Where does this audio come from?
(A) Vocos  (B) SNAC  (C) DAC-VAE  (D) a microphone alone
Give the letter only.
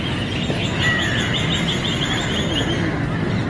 D